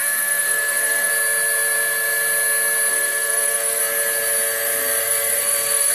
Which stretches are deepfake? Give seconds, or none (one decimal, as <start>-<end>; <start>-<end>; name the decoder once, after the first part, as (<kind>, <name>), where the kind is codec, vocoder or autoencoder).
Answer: 0.0-1.1 (codec, SNAC); 2.9-3.8; 5.0-5.9